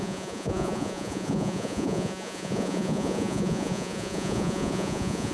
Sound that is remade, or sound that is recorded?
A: remade